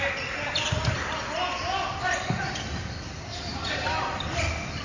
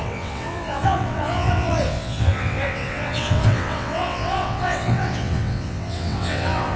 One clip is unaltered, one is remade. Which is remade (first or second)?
second